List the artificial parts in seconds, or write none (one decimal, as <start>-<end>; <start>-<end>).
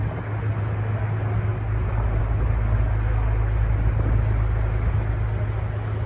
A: none